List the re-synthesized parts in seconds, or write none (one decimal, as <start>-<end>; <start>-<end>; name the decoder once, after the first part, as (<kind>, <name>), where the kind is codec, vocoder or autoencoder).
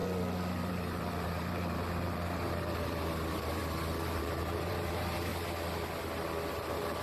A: 0.7-3.6 (vocoder, BigVGAN v2); 4.2-5.3; 6.5-7.0